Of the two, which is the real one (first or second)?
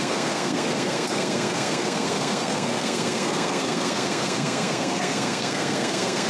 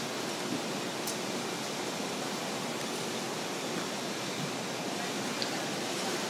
second